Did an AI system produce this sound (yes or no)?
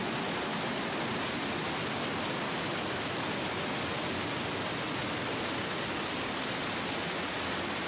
no